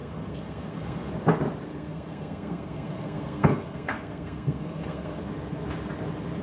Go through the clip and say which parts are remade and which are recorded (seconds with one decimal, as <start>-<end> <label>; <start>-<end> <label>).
0.0-1.1 remade; 1.1-1.7 recorded; 1.7-5.2 remade; 5.2-6.4 recorded